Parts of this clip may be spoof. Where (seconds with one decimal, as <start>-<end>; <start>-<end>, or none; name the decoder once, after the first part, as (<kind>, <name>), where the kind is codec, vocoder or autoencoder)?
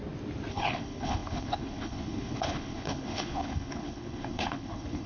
0.5-5.1 (codec, HILCodec)